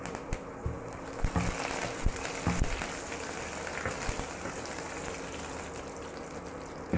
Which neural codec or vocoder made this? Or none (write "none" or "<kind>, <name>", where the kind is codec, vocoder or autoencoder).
none